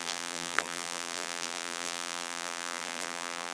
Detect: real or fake fake